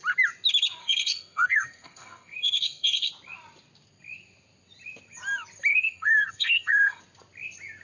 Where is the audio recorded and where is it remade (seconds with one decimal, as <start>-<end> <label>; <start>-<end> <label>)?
0.0-0.8 recorded; 0.8-3.1 remade; 3.1-5.7 recorded; 5.7-7.0 remade; 7.0-7.8 recorded